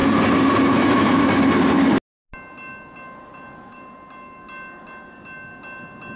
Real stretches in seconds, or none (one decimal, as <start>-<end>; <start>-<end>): 0.0-6.2